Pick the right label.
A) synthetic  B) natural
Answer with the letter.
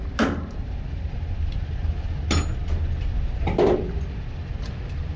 B